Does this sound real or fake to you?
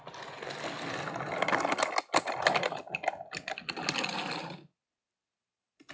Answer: real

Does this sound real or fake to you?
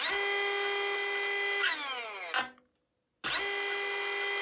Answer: real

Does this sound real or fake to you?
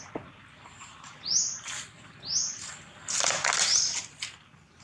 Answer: real